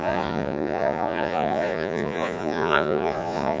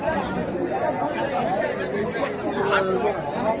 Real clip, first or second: second